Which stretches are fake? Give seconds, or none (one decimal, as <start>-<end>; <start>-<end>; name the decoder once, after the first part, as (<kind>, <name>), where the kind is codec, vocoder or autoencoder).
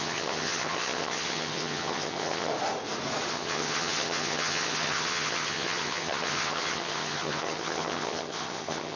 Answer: 0.0-2.5 (vocoder, HiFi-GAN); 3.3-9.0